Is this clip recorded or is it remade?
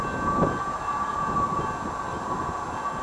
recorded